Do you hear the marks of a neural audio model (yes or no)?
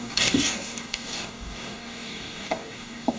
yes